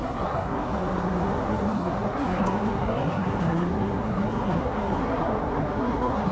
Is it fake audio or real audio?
fake